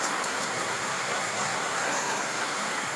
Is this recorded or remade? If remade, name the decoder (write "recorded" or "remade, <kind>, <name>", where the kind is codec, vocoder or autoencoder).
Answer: remade, codec, SNAC